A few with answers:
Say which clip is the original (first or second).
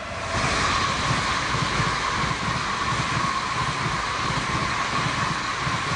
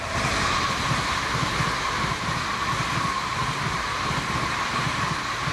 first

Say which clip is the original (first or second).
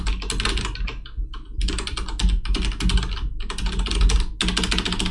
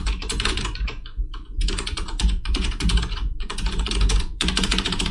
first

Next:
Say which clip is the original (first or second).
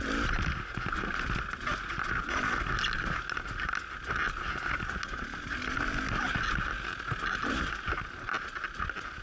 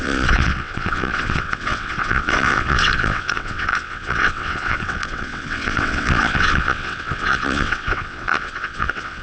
first